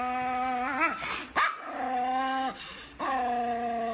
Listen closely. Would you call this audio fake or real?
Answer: real